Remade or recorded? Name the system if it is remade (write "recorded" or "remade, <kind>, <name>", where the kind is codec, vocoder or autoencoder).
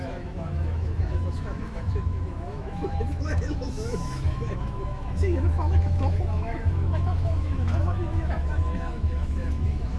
remade, autoencoder, DAC-VAE